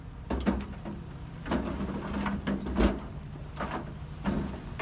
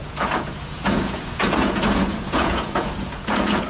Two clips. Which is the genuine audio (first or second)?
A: first